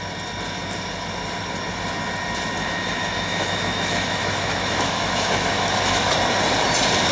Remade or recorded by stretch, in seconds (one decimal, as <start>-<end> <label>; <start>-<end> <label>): 0.0-2.6 recorded; 2.6-6.1 remade; 6.1-7.1 recorded